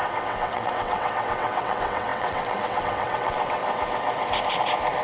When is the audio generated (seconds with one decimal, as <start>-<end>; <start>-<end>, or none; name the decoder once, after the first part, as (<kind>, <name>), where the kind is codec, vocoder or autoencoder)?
0.0-3.6 (vocoder, WaveNeXt)